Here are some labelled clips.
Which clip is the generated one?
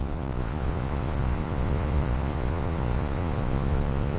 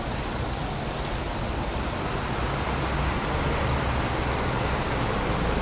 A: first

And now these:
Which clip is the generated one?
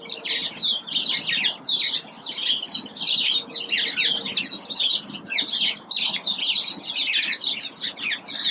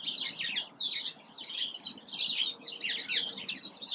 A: second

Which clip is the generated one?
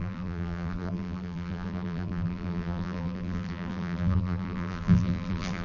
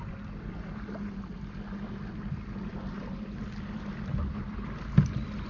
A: first